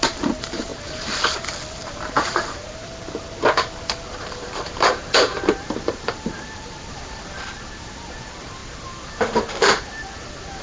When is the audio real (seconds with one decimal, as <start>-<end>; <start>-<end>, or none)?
0.7-1.7; 2.9-4.1